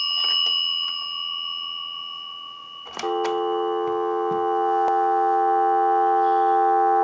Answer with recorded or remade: recorded